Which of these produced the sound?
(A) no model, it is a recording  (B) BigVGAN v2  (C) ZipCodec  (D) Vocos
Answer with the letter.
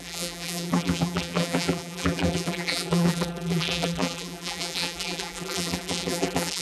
B